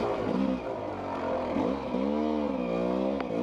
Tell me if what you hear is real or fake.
real